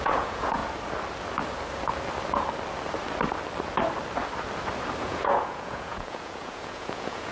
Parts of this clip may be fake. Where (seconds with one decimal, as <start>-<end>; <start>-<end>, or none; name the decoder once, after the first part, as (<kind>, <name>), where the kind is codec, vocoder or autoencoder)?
0.0-0.6 (vocoder, Vocos); 5.0-7.3

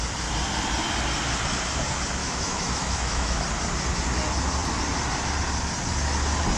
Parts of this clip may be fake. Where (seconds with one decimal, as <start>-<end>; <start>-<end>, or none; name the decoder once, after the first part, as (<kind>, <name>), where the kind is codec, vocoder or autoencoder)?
2.2-3.4 (autoencoder, DAC-VAE)

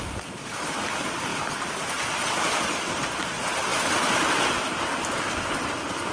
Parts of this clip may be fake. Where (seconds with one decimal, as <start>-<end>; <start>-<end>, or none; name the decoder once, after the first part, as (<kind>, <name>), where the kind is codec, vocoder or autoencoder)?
0.0-6.1 (vocoder, BigVGAN v2)

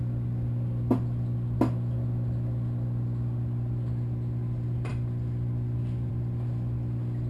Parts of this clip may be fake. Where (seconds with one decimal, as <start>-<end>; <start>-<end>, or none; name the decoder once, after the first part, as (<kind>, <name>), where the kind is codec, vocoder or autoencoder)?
none

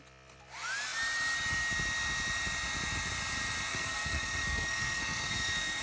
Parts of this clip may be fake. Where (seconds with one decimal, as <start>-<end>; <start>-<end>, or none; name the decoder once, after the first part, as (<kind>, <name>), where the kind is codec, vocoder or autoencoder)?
3.7-5.8 (codec, SNAC)

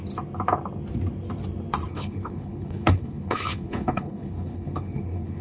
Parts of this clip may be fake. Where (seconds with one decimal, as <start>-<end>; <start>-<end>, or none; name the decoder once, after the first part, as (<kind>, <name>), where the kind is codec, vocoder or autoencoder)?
1.9-5.4 (codec, HILCodec)

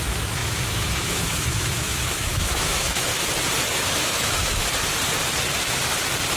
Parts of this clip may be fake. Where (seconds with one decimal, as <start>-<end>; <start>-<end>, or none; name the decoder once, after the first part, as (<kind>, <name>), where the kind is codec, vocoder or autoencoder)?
0.0-3.1 (autoencoder, DAC-VAE); 3.7-4.6